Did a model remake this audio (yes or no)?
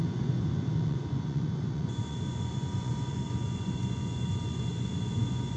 yes